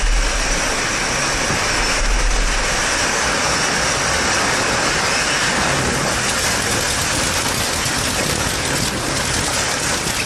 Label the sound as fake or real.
real